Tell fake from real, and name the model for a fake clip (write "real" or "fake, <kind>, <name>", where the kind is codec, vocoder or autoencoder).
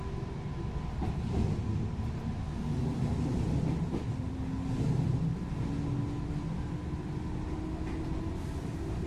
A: real